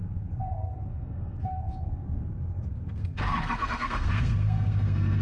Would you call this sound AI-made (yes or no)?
yes